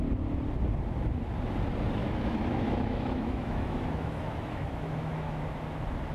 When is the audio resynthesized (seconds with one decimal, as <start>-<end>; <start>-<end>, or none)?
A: 2.0-5.4